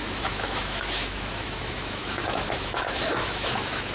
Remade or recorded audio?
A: remade